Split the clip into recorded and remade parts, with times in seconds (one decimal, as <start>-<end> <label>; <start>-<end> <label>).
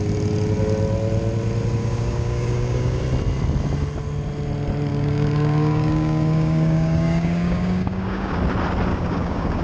0.0-1.8 recorded; 1.8-3.0 remade; 3.0-4.9 recorded; 4.9-8.4 remade; 8.4-8.9 recorded; 8.9-9.6 remade